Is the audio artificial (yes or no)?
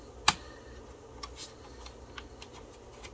no